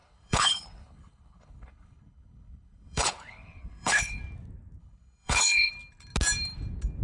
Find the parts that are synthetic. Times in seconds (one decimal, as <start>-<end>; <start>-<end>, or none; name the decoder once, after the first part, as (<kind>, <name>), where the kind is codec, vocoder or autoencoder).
0.0-4.2 (codec, HILCodec); 4.8-5.7